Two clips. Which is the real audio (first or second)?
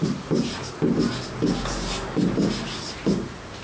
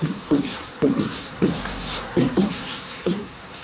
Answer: first